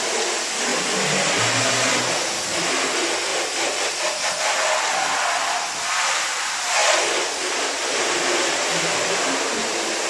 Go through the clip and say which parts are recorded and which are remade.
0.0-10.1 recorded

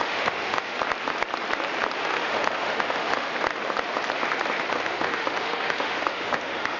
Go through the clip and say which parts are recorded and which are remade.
0.0-0.7 remade; 0.7-2.0 recorded; 2.0-3.3 remade; 3.3-4.7 recorded; 4.7-6.8 remade

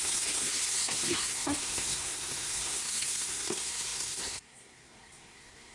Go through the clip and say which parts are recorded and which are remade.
0.0-5.7 remade

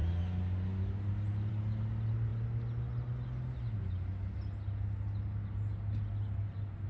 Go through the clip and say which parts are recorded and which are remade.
0.0-6.9 recorded